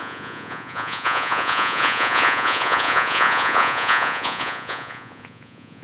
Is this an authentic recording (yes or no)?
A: no